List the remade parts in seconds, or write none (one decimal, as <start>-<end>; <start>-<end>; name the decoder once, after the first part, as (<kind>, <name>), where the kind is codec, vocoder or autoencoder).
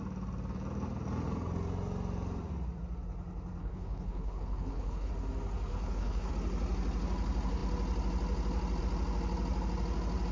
3.6-5.1 (codec, HILCodec); 5.7-6.3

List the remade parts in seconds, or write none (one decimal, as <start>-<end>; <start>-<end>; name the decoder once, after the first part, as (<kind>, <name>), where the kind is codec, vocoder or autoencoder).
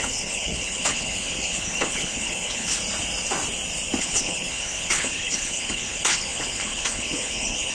0.0-2.8 (codec, HILCodec); 4.0-7.7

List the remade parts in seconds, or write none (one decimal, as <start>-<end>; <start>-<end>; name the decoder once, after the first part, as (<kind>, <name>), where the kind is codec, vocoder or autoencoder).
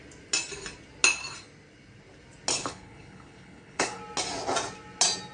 2.5-4.0 (codec, HILCodec)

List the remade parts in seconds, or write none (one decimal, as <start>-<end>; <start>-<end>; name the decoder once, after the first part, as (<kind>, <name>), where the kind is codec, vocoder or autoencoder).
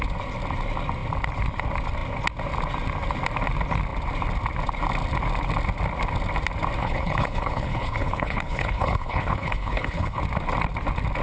6.8-10.2 (codec, HILCodec)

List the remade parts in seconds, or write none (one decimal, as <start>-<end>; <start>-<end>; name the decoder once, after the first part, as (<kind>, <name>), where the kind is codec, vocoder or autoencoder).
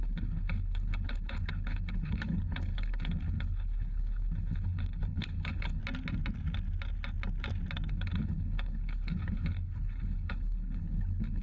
0.0-5.8 (codec, HILCodec); 7.9-11.4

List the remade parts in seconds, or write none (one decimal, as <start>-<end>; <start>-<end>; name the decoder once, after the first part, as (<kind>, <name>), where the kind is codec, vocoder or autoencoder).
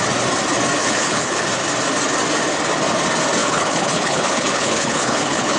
0.8-1.4 (codec, HILCodec); 3.4-5.6